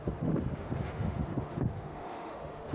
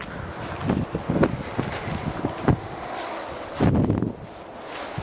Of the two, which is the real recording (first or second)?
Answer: second